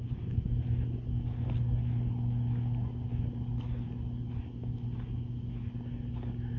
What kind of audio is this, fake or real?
real